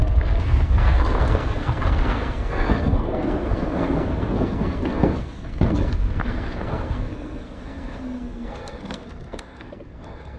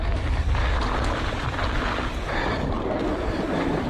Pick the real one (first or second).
second